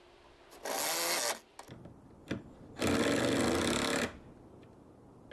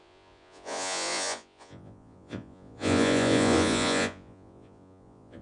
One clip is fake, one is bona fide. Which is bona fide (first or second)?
first